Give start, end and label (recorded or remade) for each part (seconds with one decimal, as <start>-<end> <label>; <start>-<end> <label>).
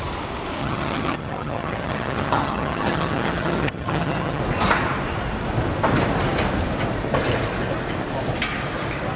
0.0-0.6 recorded; 0.6-4.4 remade; 4.4-9.2 recorded